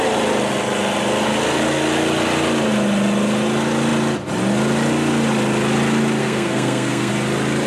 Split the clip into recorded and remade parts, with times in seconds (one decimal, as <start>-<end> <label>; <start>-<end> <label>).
0.0-6.2 recorded; 6.2-7.1 remade; 7.1-7.7 recorded